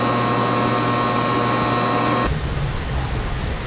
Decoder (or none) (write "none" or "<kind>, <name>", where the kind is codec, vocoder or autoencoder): none